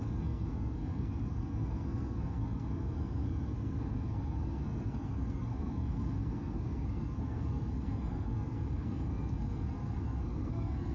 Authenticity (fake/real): fake